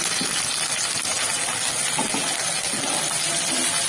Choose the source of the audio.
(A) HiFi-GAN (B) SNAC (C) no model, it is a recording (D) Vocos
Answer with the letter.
C